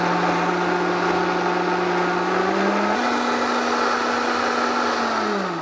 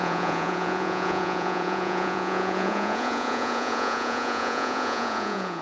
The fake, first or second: second